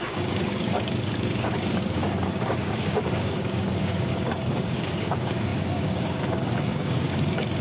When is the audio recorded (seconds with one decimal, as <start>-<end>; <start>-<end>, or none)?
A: none